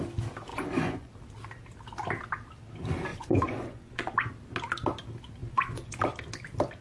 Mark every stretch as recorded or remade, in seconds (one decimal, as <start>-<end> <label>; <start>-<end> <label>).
0.0-0.5 recorded; 0.5-1.1 remade; 1.1-3.1 recorded; 3.1-4.3 remade; 4.3-5.4 recorded; 5.4-6.0 remade; 6.0-6.8 recorded